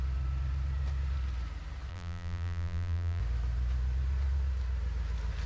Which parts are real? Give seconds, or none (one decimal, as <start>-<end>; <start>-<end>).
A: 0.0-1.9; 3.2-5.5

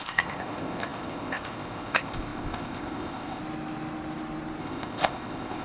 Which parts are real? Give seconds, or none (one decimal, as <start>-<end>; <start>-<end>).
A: 3.4-4.6

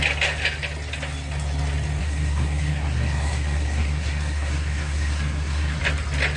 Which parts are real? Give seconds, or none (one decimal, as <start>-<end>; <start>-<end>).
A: 0.0-2.0; 5.8-6.4

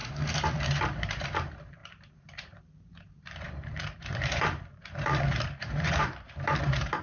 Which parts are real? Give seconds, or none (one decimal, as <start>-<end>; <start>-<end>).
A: 0.0-0.6